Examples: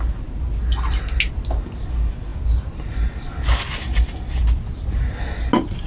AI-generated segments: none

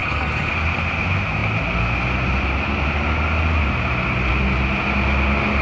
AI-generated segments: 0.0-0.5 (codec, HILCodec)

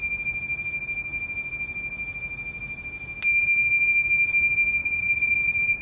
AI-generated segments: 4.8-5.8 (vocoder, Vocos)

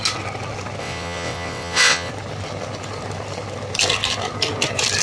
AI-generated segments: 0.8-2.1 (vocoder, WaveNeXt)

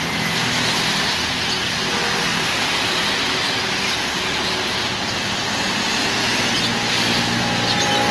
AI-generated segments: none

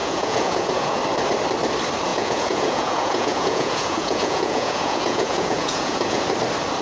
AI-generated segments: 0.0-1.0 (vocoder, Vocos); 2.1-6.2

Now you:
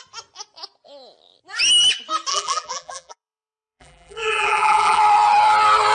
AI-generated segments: 2.3-5.0 (vocoder, BigVGAN v2)

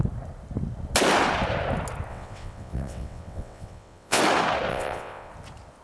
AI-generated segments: 2.1-4.2 (vocoder, WaveNeXt); 4.7-5.3